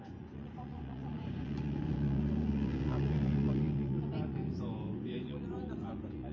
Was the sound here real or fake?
fake